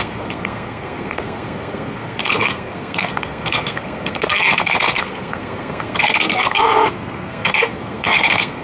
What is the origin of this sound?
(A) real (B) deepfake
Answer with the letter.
B